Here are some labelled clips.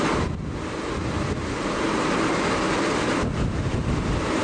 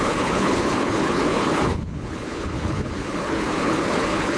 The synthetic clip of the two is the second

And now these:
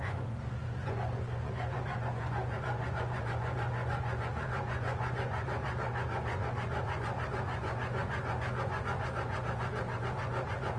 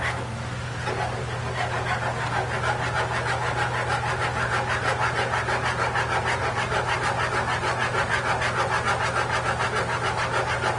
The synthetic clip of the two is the first